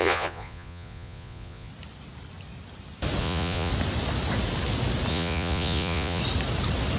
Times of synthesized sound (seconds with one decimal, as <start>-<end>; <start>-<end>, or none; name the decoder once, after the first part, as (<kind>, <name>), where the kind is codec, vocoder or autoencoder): 0.0-1.7 (vocoder, Vocos); 3.2-3.7; 5.1-6.2